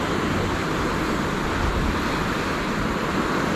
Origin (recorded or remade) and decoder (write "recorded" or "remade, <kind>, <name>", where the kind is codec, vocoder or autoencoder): recorded